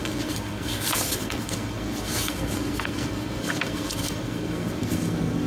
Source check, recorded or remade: remade